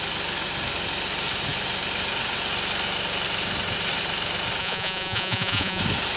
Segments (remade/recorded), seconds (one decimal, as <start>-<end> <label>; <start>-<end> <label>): 0.0-4.6 recorded; 4.6-5.8 remade; 5.8-6.2 recorded